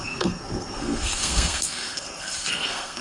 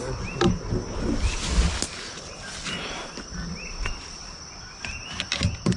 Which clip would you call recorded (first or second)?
second